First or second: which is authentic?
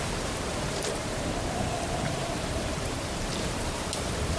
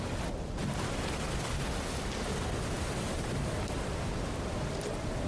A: second